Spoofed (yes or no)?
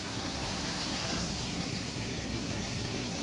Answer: yes